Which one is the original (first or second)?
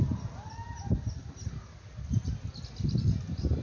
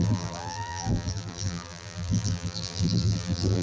first